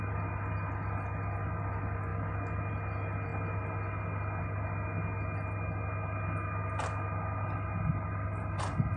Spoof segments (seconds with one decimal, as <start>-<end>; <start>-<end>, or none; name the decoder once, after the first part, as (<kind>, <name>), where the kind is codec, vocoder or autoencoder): none